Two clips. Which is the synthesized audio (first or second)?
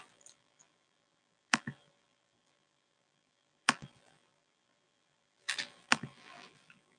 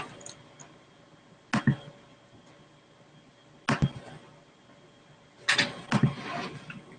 first